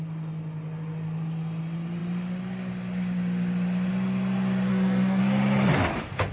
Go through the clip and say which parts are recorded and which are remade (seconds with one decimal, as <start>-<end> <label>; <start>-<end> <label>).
0.0-4.7 recorded; 4.7-5.2 remade; 5.2-6.3 recorded